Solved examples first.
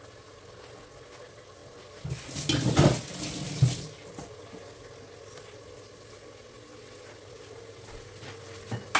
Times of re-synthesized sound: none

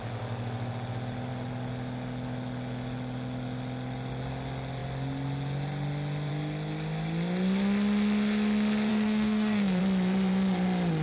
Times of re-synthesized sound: 8.9-9.8

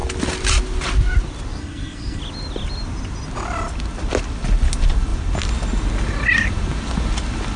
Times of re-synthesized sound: 1.6-2.2

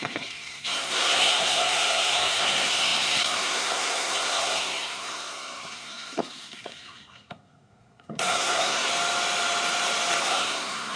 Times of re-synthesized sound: 0.0-8.9; 10.2-11.0